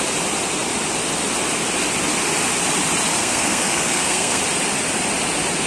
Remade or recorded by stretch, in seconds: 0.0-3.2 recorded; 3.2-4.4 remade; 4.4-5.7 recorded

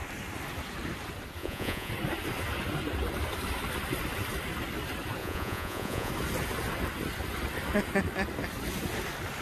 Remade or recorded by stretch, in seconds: 0.0-1.4 recorded; 1.4-1.9 remade; 1.9-5.2 recorded; 5.2-6.1 remade; 6.1-9.4 recorded

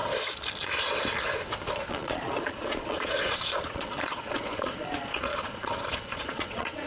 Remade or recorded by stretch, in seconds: 0.0-1.9 recorded; 1.9-6.9 remade